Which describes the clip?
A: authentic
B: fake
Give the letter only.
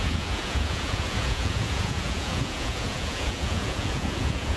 B